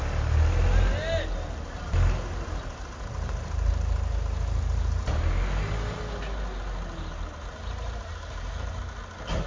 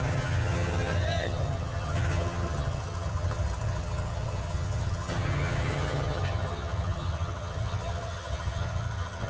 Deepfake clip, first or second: second